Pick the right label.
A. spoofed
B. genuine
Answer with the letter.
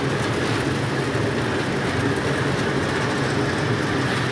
B